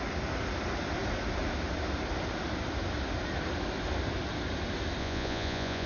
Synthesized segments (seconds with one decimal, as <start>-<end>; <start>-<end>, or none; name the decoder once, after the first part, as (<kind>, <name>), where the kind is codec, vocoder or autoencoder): 5.0-5.9 (vocoder, Vocos)